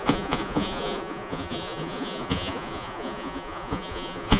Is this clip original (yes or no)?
no